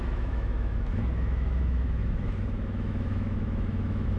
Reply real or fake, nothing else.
fake